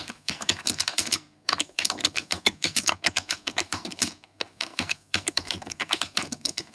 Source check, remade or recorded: remade